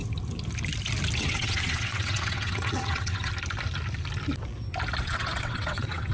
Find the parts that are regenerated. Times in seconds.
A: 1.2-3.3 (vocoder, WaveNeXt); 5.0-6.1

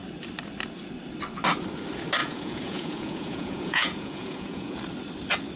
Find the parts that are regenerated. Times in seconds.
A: 2.2-4.7 (vocoder, Vocos)

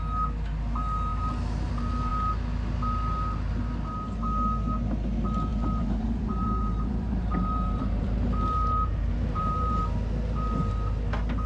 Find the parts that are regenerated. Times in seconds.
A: 5.5-9.8 (vocoder, BigVGAN v2)